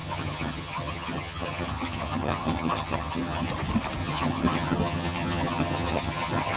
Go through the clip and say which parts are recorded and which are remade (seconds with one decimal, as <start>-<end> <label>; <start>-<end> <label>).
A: 0.0-3.5 remade; 3.5-4.0 recorded; 4.0-6.6 remade